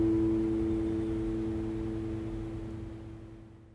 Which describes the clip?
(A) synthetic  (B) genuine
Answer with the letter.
B